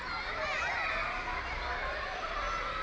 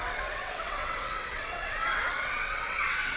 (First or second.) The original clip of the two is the first